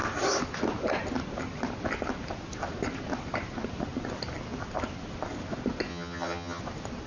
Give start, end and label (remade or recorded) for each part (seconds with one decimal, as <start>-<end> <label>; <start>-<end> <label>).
0.0-5.9 recorded; 5.9-6.6 remade; 6.6-7.1 recorded